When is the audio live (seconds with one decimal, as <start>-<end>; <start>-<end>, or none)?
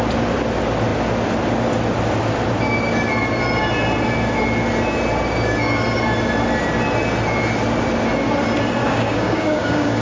0.0-8.8